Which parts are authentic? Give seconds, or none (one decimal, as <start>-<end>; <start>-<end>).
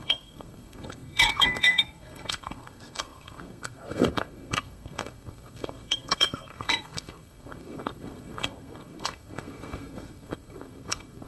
none